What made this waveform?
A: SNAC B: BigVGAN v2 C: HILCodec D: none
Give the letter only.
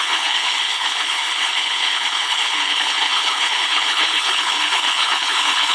C